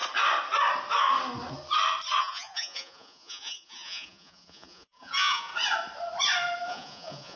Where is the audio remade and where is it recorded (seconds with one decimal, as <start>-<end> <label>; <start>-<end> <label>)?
0.0-2.2 recorded; 2.2-5.5 remade; 5.5-6.7 recorded; 6.7-7.4 remade